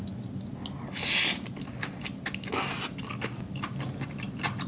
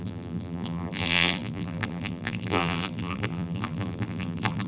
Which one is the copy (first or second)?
second